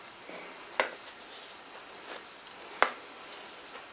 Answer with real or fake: real